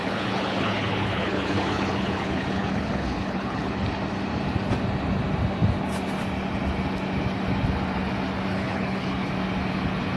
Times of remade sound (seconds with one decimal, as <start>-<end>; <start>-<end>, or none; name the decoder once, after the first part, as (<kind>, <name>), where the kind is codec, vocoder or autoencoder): 0.0-3.7 (codec, HILCodec); 8.5-9.3